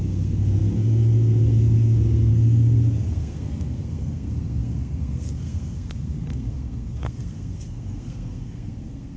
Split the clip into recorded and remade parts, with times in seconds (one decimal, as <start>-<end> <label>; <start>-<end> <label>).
0.0-9.2 remade